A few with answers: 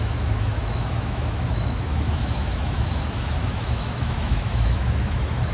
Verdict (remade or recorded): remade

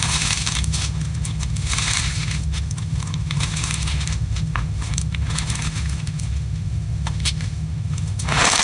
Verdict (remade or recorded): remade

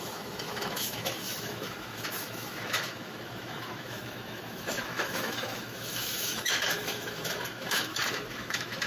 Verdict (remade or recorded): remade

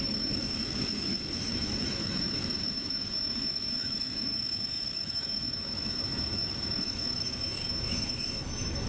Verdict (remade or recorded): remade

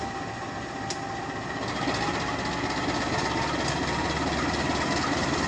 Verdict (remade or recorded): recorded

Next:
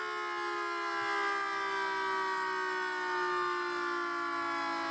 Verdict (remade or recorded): recorded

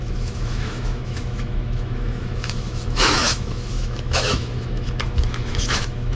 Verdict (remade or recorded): remade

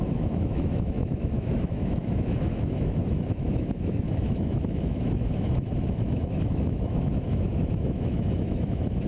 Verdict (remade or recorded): remade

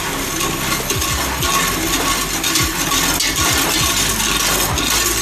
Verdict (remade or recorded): recorded